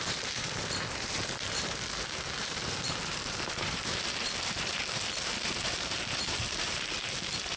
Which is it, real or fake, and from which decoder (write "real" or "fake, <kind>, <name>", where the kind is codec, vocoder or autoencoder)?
fake, vocoder, BigVGAN v2